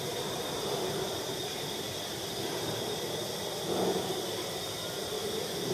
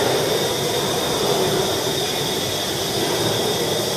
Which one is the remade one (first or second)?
first